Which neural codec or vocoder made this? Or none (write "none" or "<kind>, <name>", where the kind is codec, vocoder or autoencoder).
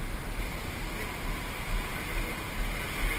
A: none